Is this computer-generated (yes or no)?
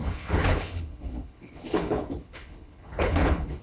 yes